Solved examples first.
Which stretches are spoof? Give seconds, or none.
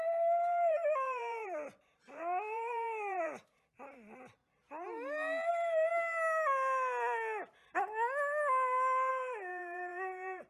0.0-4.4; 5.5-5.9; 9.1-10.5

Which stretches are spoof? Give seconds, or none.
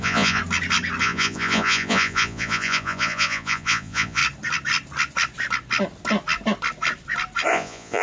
0.0-0.4; 1.0-4.2; 7.5-8.0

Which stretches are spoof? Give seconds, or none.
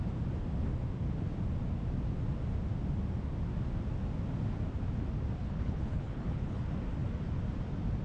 5.4-6.6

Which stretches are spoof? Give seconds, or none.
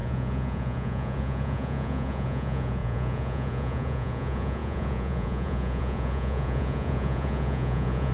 0.0-8.1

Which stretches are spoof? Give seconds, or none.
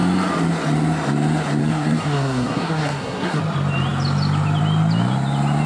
1.6-3.4